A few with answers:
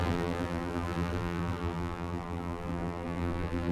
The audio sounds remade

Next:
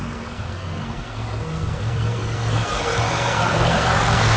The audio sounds remade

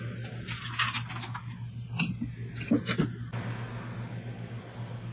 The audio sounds recorded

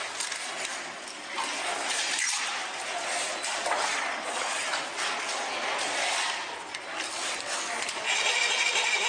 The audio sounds recorded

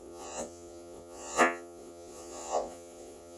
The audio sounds remade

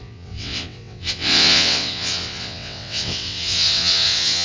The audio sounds remade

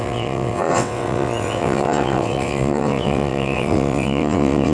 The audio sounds remade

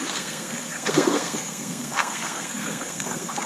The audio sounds remade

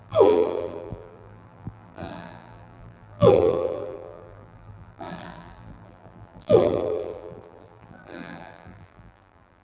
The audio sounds remade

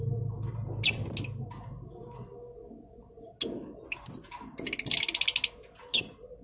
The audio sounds recorded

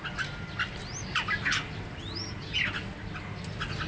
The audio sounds recorded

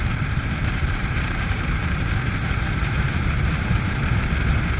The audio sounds remade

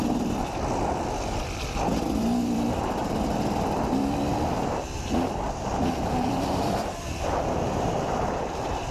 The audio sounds remade